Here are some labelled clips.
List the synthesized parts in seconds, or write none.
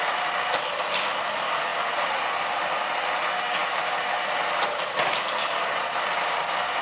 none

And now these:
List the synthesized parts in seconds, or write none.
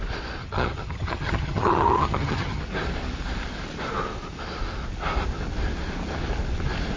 0.4-2.6 (vocoder, HiFi-GAN)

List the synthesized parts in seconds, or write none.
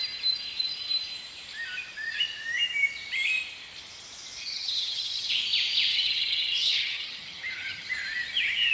4.4-5.3 (vocoder, HiFi-GAN); 5.9-7.9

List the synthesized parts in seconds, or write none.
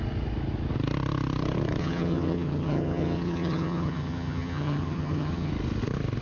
1.8-5.5 (vocoder, HiFi-GAN)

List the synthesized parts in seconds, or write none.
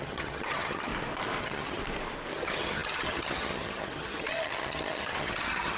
0.0-0.9 (vocoder, HiFi-GAN); 1.4-1.8; 2.3-5.8